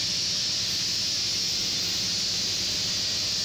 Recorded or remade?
recorded